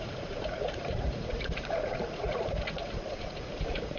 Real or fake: fake